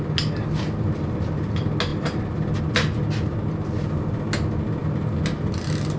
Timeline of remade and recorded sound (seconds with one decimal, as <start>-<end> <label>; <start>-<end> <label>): 0.0-6.0 recorded